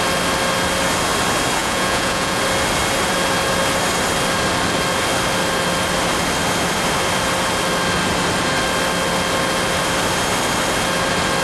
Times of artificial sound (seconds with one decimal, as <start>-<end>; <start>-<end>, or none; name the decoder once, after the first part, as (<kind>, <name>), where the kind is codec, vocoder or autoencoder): 1.6-2.4 (vocoder, Vocos)